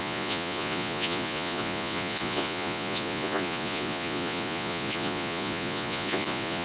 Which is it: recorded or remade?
remade